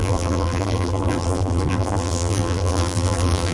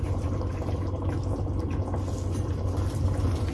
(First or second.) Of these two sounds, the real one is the second